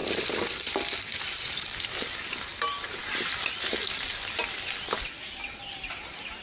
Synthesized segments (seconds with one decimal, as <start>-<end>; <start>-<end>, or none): 0.0-1.8